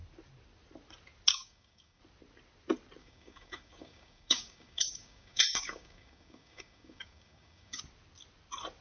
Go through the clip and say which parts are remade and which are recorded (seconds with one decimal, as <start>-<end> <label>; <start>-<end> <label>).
0.0-1.3 recorded; 1.3-2.0 remade; 2.0-3.0 recorded; 3.0-7.8 remade; 7.8-8.8 recorded